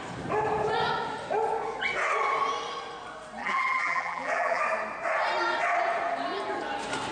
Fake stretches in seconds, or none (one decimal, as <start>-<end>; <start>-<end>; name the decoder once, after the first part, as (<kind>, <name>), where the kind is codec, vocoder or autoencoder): 3.4-4.6 (vocoder, BigVGAN v2)